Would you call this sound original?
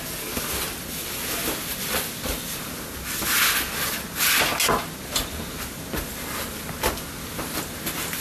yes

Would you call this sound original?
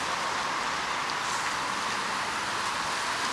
yes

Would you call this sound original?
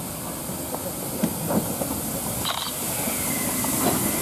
yes